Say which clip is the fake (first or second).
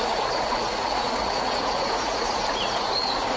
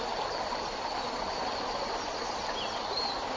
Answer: first